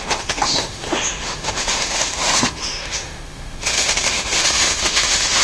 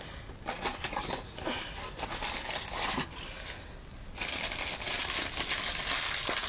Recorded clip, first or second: second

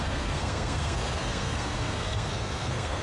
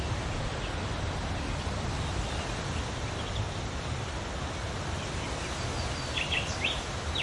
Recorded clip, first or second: second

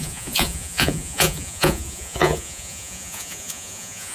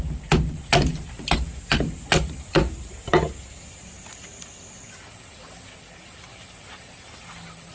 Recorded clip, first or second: second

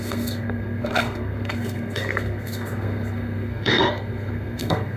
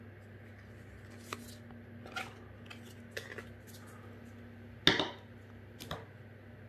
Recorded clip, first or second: second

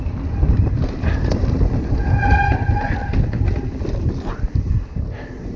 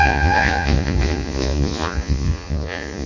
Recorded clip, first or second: first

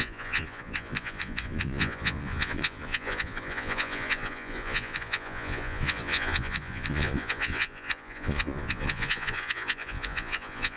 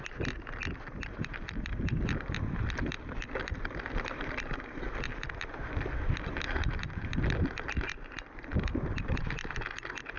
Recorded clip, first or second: second